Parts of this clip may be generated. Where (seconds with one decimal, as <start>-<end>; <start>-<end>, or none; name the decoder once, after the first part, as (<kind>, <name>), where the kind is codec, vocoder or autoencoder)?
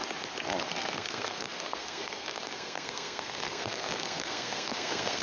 0.7-5.2 (codec, SNAC)